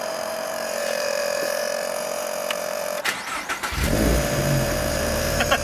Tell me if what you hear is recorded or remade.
remade